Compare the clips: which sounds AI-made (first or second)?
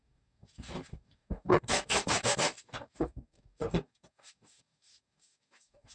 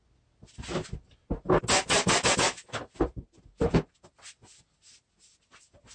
first